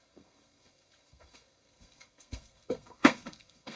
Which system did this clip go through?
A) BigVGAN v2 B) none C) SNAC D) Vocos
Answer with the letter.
C